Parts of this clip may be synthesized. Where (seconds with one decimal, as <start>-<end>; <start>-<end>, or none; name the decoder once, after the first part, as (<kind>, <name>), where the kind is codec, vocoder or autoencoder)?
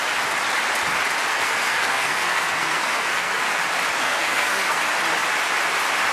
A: 1.3-3.6 (codec, SNAC); 4.0-4.8